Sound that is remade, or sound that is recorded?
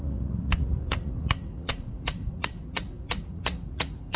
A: remade